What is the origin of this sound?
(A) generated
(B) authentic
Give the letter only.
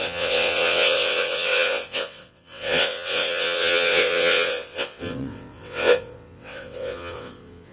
A